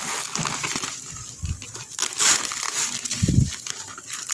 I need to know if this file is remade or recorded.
remade